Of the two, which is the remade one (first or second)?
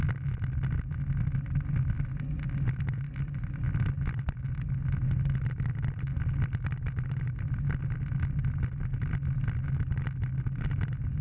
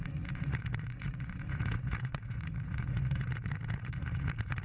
second